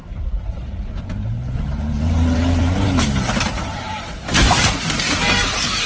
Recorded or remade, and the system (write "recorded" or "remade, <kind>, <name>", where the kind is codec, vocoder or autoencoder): remade, vocoder, BigVGAN v2